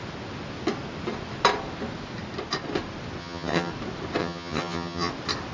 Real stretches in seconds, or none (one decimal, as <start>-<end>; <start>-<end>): 0.0-3.2; 3.7-4.2; 5.1-5.5